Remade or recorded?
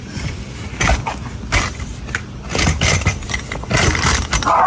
recorded